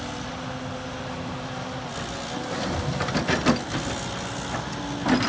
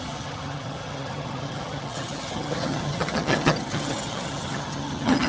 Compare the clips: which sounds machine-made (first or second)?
second